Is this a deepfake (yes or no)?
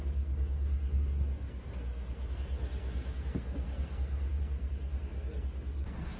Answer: yes